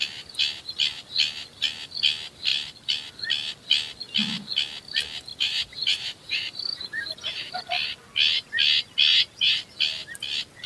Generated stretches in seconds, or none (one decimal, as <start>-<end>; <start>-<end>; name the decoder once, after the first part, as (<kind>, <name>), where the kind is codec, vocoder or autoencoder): 5.3-7.5 (vocoder, BigVGAN v2); 9.1-9.6